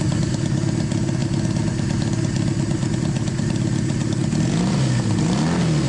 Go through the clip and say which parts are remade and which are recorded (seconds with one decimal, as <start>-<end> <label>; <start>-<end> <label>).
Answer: 0.0-5.9 recorded